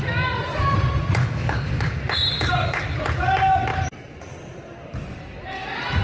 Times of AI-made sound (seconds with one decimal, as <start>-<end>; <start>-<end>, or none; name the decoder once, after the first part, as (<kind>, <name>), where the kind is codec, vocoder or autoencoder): 1.2-2.0 (codec, DAC)